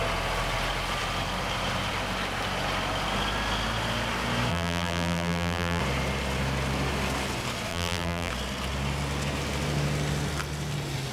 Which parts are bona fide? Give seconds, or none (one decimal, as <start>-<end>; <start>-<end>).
0.0-4.5; 5.8-7.7; 8.3-11.1